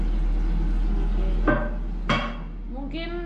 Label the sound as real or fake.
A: real